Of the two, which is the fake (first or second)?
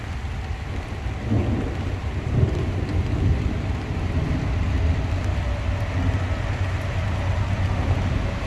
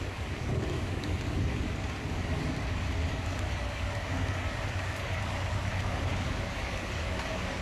second